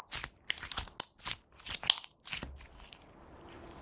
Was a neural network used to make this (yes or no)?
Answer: no